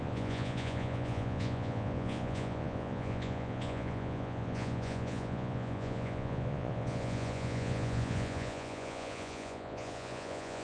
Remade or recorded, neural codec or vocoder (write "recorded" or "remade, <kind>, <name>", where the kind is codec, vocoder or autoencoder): remade, vocoder, Vocos